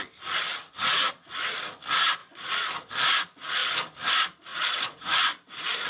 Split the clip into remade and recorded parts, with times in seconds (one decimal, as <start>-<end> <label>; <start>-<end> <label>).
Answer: 0.0-0.5 recorded; 0.5-1.1 remade; 1.1-4.5 recorded; 4.5-5.2 remade; 5.2-5.9 recorded